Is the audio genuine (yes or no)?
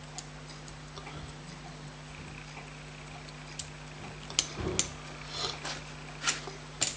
yes